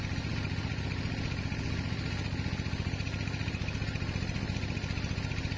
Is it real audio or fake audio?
real